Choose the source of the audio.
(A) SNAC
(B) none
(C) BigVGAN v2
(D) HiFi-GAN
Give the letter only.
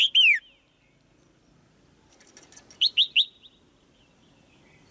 B